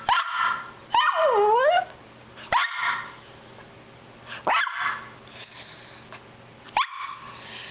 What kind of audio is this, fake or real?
real